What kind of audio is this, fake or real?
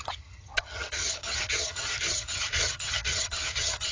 fake